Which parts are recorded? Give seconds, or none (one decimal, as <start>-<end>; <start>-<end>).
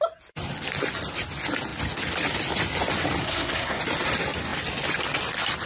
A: 0.0-3.2; 3.8-5.7